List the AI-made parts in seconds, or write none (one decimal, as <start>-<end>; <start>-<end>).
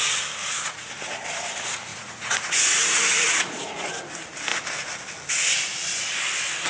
0.4-0.9; 1.9-3.9